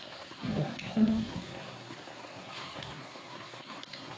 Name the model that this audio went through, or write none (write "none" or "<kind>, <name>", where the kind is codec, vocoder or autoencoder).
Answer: codec, SNAC